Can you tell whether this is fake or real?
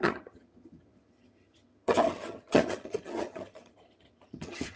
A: fake